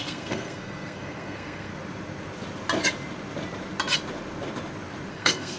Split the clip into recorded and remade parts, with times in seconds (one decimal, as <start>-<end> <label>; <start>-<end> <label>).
0.0-1.7 remade; 1.7-5.1 recorded; 5.1-5.6 remade